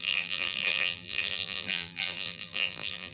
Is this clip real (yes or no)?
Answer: no